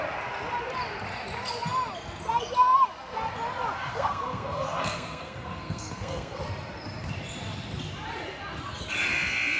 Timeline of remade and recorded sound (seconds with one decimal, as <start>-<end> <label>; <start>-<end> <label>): 0.0-3.9 recorded; 3.9-6.4 remade; 6.4-9.6 recorded